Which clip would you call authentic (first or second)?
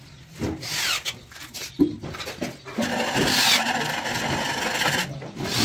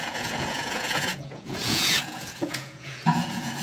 first